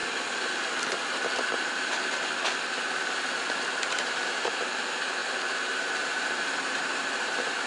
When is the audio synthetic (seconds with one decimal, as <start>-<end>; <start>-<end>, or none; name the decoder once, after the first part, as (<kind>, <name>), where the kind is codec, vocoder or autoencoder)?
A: 2.8-7.7 (vocoder, BigVGAN v2)